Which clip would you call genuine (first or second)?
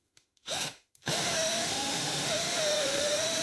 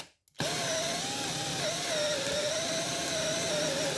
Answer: second